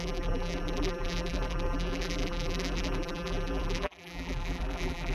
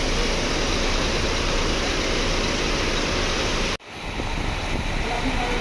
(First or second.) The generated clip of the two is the first